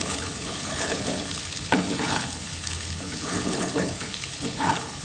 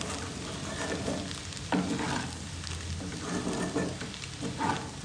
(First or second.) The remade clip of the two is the first